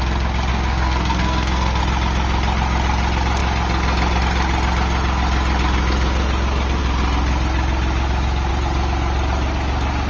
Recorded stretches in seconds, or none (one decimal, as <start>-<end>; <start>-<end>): 0.0-0.5; 1.8-10.1